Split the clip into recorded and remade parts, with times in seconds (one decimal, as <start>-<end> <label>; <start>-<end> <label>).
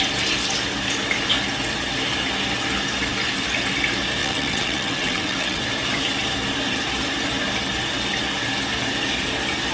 0.0-4.2 recorded; 4.2-5.6 remade; 5.6-9.7 recorded